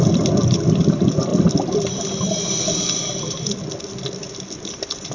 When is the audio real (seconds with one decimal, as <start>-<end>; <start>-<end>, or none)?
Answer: 0.0-5.1